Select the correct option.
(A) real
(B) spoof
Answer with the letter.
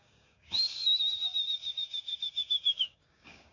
B